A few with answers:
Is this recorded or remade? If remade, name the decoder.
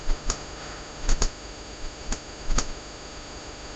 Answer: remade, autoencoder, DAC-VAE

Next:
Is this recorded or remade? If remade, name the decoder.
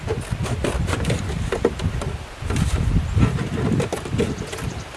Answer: recorded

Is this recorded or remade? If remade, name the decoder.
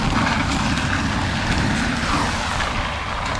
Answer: recorded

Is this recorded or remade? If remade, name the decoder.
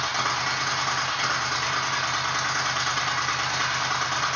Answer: recorded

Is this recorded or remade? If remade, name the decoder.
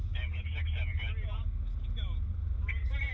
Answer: recorded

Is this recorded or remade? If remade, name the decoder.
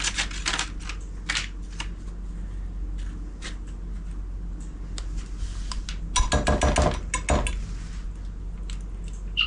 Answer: recorded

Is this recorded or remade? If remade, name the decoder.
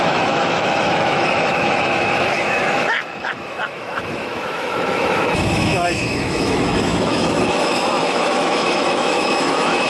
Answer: remade, autoencoder, DAC-VAE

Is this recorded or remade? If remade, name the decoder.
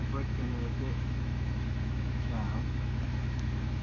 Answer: remade, autoencoder, DAC-VAE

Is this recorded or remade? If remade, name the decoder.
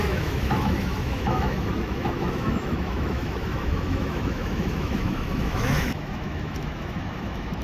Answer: remade, autoencoder, DAC-VAE